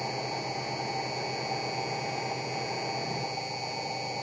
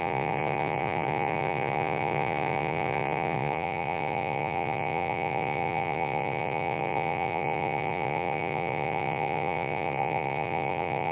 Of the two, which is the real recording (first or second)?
first